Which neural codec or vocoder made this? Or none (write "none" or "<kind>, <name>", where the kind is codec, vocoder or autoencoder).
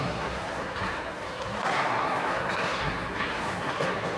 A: codec, SNAC